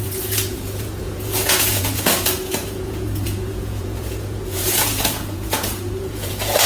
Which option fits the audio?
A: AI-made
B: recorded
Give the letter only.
A